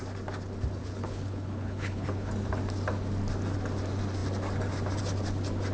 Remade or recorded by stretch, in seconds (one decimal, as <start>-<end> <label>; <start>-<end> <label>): 0.0-0.8 recorded; 0.8-2.3 remade; 2.3-5.7 recorded